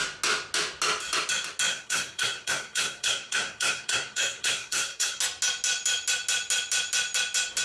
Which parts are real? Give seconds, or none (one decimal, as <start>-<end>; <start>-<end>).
0.0-1.7; 5.2-7.6